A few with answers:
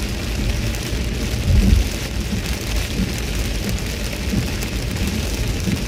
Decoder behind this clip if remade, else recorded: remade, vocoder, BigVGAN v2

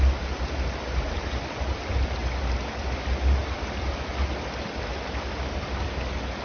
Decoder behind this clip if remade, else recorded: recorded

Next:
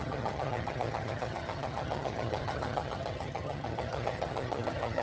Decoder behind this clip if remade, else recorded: remade, vocoder, HiFi-GAN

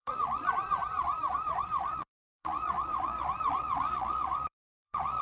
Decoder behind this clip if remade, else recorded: remade, vocoder, Vocos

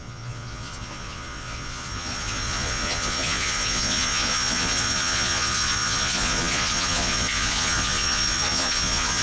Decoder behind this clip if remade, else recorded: remade, vocoder, Vocos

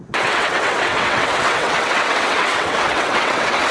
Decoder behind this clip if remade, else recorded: remade, vocoder, WaveNeXt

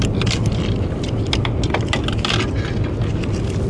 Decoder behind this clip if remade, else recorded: recorded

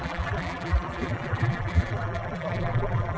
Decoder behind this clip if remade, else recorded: remade, vocoder, BigVGAN v2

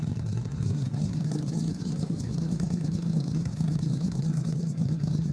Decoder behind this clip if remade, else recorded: remade, codec, SNAC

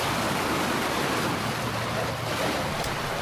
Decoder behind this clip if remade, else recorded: recorded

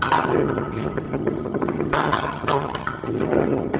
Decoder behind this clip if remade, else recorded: remade, vocoder, HiFi-GAN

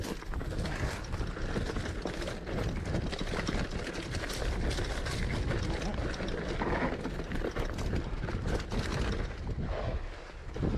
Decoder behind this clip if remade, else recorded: recorded